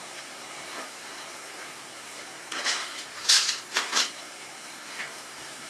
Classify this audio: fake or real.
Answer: fake